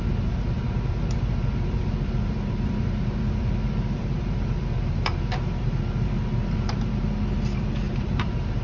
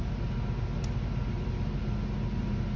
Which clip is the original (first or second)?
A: second